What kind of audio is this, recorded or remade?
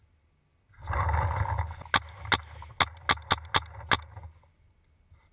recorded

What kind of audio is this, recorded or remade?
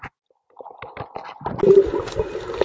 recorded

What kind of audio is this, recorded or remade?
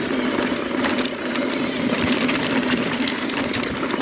remade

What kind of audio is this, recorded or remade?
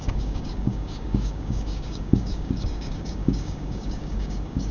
remade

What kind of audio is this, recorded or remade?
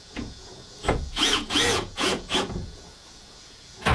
remade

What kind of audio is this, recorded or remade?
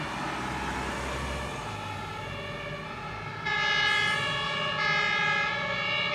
recorded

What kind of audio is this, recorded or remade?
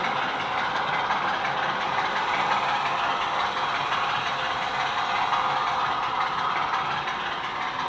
recorded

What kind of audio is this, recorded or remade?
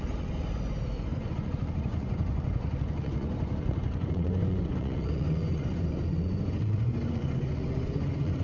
remade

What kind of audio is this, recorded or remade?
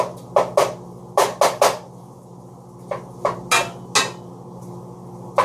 recorded